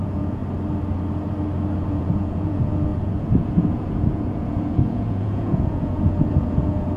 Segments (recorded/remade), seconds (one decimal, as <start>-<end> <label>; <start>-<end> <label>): 0.0-0.4 remade; 0.4-1.8 recorded; 1.8-7.0 remade